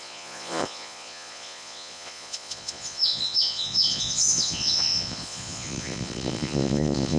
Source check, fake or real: fake